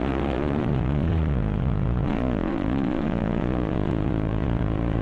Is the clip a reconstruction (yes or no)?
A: yes